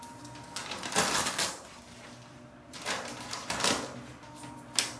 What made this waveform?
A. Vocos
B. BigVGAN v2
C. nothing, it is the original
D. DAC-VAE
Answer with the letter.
C